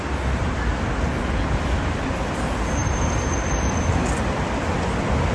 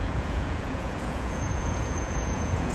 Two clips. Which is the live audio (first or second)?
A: first